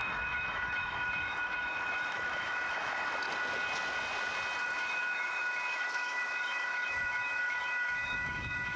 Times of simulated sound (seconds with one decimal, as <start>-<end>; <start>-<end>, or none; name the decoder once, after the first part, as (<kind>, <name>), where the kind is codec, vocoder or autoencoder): 0.0-3.2 (autoencoder, DAC-VAE); 4.6-8.8